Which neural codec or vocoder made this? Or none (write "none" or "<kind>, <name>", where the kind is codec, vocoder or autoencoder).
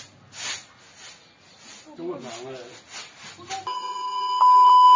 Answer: none